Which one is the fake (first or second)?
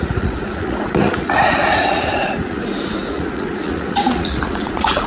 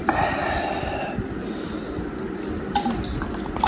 first